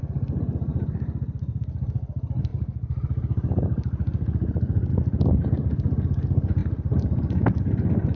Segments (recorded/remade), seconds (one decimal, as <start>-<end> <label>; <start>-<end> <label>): 0.0-0.7 recorded; 0.7-1.6 remade; 1.6-2.5 recorded; 2.5-4.9 remade; 4.9-6.6 recorded; 6.6-7.6 remade; 7.6-8.2 recorded